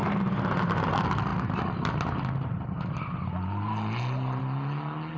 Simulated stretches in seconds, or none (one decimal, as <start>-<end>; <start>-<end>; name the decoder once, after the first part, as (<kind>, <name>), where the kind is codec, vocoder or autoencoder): none